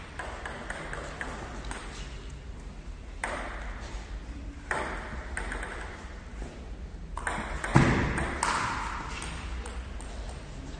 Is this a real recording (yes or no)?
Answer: yes